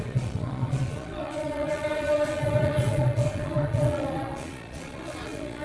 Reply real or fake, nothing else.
fake